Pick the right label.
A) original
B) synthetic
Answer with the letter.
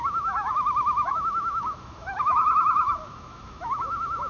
B